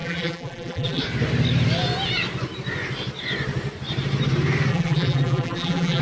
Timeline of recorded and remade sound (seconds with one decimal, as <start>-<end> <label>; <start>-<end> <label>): 0.0-1.0 remade; 1.0-4.7 recorded; 4.7-6.0 remade

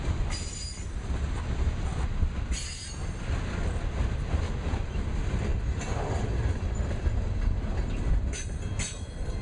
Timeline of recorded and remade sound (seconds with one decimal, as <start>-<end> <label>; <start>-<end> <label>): 0.0-9.4 recorded

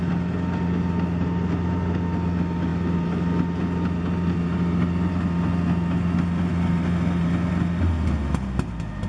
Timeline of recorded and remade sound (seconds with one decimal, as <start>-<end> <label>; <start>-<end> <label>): 0.0-9.1 recorded

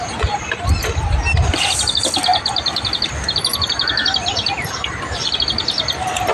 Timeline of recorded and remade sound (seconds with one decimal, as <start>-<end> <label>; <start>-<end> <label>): 0.0-6.3 recorded

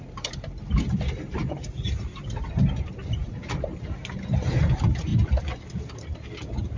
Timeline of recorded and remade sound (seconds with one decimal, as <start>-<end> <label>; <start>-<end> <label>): 0.0-1.4 remade; 1.4-2.5 recorded; 2.5-5.1 remade; 5.1-6.8 recorded